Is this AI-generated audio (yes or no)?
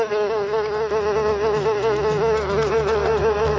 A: no